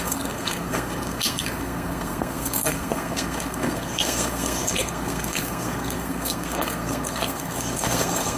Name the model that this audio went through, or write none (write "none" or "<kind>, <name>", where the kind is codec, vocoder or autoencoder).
codec, SNAC